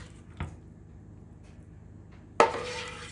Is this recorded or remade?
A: recorded